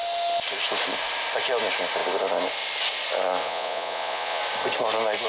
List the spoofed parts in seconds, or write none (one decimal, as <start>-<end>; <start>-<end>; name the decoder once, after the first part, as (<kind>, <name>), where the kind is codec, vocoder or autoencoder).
3.4-4.4 (vocoder, Vocos)